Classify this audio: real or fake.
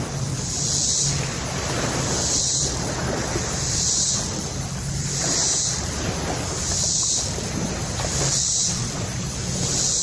real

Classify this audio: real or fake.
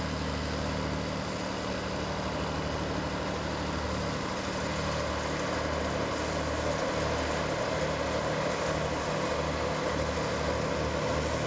real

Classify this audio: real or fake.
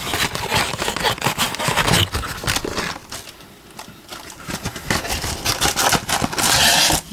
real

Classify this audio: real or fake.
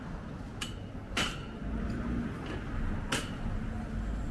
real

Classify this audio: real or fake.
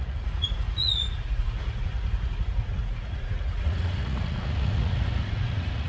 fake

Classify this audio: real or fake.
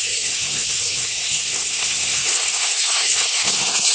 fake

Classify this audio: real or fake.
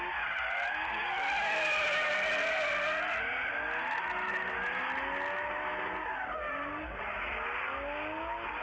real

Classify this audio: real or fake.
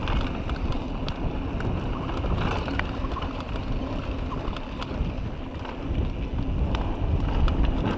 real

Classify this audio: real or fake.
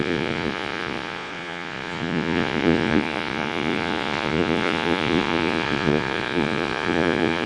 fake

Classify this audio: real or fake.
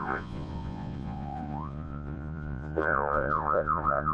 fake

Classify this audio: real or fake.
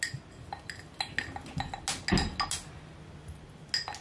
real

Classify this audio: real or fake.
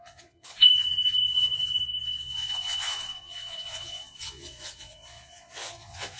fake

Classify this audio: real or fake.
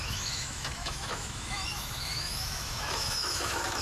fake